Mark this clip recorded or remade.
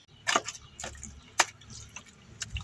recorded